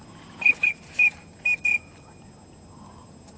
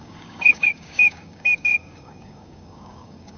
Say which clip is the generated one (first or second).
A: second